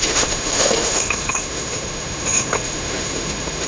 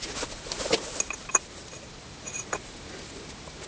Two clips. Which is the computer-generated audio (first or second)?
first